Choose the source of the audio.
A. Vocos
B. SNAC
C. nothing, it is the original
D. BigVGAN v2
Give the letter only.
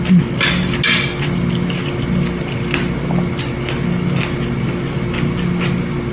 C